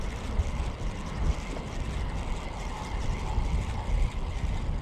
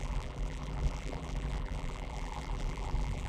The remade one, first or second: second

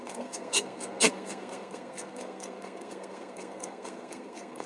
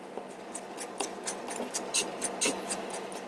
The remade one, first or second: first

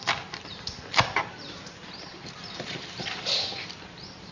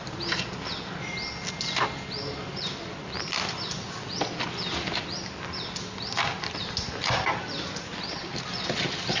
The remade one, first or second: first